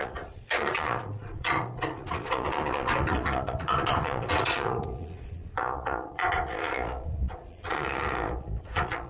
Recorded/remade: remade